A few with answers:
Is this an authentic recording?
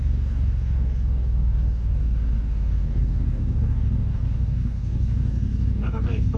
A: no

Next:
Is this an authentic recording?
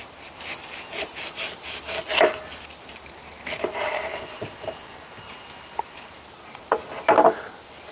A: yes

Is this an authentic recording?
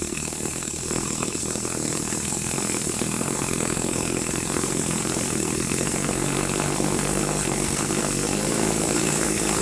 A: no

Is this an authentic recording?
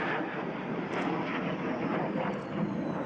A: no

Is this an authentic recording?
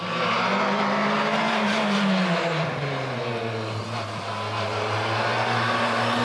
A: yes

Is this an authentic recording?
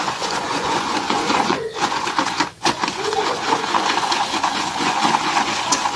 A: no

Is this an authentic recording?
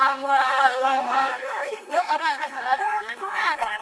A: no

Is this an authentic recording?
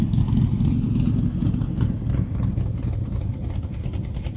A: yes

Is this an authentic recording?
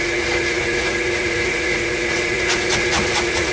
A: no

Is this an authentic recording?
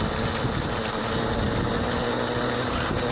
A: yes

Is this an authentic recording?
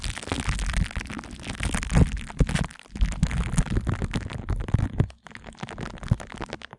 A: yes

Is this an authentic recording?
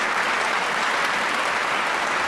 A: yes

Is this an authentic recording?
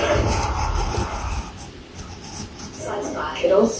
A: yes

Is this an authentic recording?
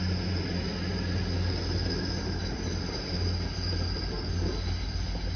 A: yes